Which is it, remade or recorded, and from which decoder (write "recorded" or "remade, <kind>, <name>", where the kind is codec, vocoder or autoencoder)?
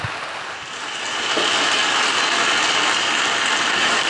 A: recorded